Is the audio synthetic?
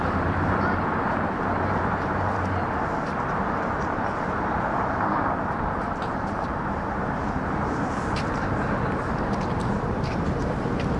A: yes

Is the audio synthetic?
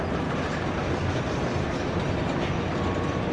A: no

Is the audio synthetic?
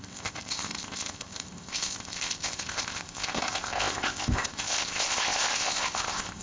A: yes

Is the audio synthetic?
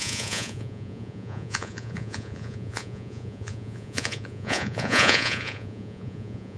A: yes